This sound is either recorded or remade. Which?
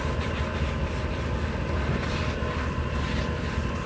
recorded